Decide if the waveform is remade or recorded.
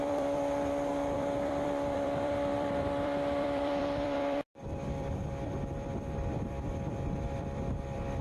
remade